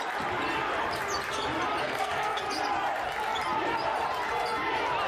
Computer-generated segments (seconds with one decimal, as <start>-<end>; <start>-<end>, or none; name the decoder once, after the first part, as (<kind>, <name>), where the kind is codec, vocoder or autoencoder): 1.8-2.4 (codec, SNAC)